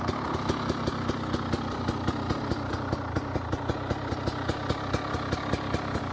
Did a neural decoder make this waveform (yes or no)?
no